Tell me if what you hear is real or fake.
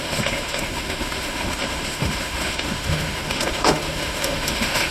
fake